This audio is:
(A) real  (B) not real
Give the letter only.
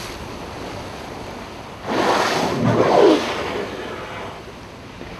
A